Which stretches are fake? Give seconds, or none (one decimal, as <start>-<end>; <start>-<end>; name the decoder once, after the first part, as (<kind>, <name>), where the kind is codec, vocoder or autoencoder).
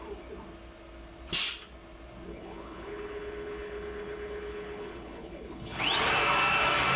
2.3-5.8 (codec, HILCodec)